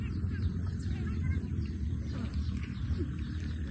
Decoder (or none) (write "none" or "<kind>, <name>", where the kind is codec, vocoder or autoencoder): none